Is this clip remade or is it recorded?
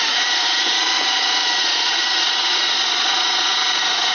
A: remade